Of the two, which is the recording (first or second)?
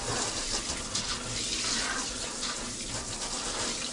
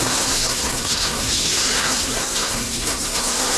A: first